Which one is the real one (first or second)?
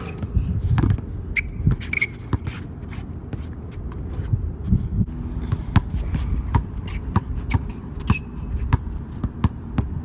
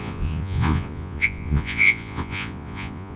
first